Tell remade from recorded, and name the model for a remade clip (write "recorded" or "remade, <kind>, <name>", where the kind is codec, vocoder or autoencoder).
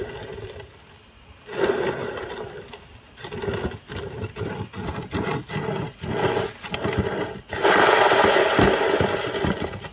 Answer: recorded